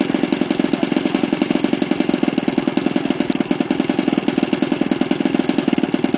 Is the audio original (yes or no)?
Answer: yes